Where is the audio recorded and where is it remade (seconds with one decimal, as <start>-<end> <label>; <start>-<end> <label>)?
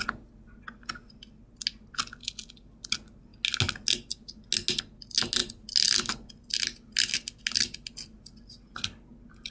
0.0-9.5 recorded